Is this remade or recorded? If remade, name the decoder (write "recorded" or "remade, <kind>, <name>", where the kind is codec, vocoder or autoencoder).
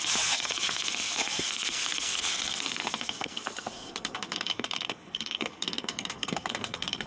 remade, codec, SNAC